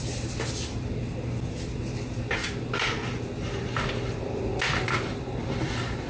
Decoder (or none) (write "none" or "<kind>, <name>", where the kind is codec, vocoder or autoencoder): none